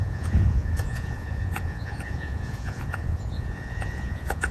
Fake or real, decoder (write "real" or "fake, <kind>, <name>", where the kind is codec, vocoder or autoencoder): fake, vocoder, Vocos